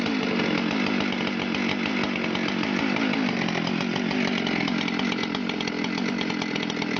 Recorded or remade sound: recorded